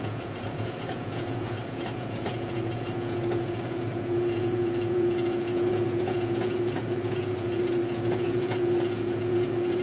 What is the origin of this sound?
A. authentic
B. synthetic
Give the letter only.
B